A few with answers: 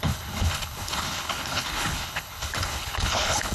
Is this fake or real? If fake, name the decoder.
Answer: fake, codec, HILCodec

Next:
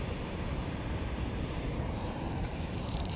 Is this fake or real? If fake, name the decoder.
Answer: fake, vocoder, BigVGAN v2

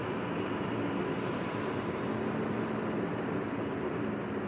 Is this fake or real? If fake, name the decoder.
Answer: fake, vocoder, BigVGAN v2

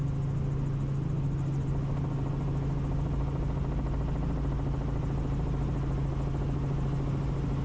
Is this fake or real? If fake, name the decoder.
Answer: real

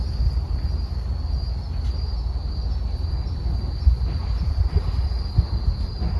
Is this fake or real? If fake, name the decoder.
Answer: real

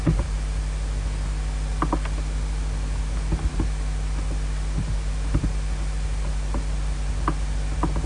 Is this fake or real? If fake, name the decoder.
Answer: real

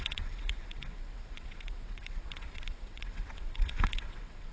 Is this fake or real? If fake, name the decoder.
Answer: fake, vocoder, WaveNeXt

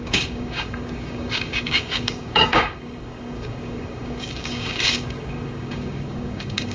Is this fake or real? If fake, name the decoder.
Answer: fake, codec, DAC